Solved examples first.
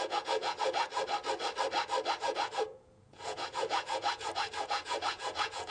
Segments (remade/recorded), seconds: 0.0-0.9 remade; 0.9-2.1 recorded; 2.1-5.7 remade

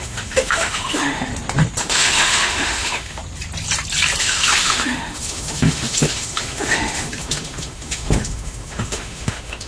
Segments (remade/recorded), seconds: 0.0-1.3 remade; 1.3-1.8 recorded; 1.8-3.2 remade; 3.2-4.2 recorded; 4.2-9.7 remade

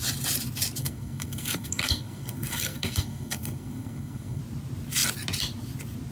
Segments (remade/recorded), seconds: 0.0-0.8 recorded; 0.8-4.4 remade; 4.4-6.1 recorded

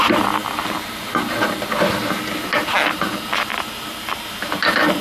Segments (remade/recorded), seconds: 0.0-0.4 remade; 0.4-2.9 recorded; 2.9-5.0 remade

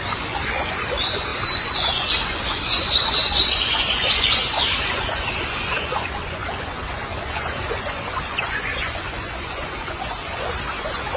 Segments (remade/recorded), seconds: 0.0-11.2 remade

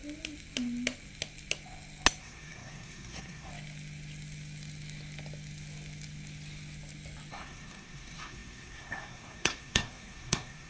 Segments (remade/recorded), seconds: 0.0-2.2 recorded; 2.2-3.5 remade; 3.5-7.3 recorded; 7.3-10.7 remade

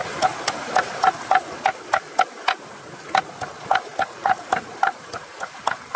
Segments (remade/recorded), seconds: 0.0-3.9 recorded; 3.9-5.3 remade; 5.3-6.0 recorded